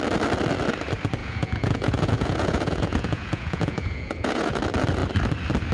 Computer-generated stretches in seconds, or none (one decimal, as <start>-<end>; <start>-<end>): 1.2-4.6